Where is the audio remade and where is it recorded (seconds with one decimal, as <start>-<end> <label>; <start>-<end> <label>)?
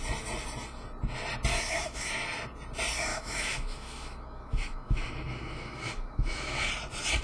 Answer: 0.0-1.5 recorded; 1.5-2.1 remade; 2.1-3.1 recorded; 3.1-6.7 remade; 6.7-7.2 recorded